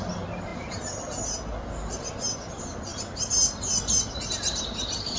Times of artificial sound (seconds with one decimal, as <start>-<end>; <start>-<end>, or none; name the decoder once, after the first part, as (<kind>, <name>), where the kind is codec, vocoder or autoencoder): none

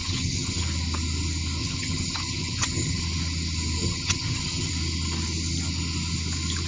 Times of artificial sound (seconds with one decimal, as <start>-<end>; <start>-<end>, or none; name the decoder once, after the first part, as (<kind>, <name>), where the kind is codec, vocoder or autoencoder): 0.0-0.6 (vocoder, HiFi-GAN); 1.6-3.0; 3.8-4.7